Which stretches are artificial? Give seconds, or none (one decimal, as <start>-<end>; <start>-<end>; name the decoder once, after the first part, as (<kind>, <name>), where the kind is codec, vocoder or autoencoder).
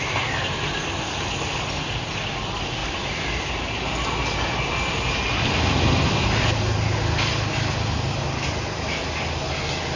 none